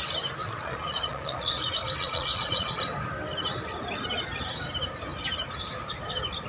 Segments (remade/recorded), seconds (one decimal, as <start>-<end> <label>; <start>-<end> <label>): 0.0-0.4 recorded; 0.4-1.6 remade; 1.6-2.0 recorded; 2.0-2.8 remade; 2.8-6.5 recorded